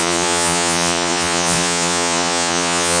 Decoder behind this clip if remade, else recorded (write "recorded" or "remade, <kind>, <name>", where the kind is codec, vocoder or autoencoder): remade, vocoder, Vocos